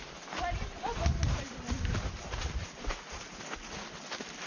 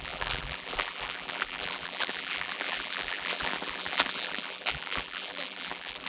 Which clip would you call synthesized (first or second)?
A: second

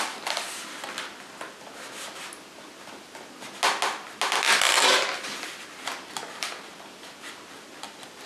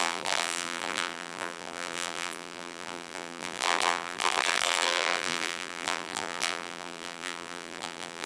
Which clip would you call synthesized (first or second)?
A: second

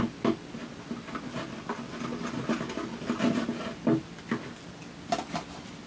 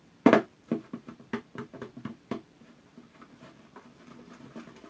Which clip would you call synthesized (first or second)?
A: second